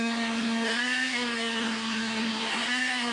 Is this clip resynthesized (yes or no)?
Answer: yes